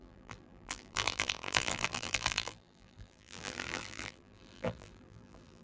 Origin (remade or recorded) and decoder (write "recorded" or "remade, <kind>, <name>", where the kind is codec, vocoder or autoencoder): remade, vocoder, BigVGAN v2